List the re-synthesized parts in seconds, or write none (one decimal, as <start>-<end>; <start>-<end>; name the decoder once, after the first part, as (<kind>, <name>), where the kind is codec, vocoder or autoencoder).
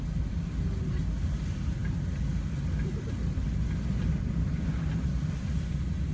none